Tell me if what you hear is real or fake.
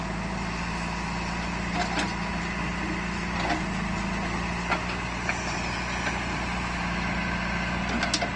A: real